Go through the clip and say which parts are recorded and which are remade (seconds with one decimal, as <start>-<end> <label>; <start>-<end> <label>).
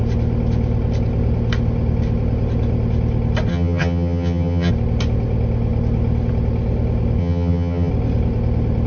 0.0-3.5 recorded; 3.5-4.7 remade; 4.7-7.2 recorded; 7.2-7.9 remade; 7.9-8.9 recorded